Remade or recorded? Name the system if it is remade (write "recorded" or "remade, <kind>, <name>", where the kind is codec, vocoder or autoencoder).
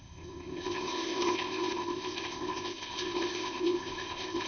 remade, codec, ZipCodec